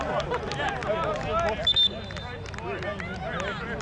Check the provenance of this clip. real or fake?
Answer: real